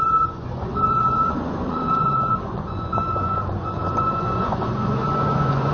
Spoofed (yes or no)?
yes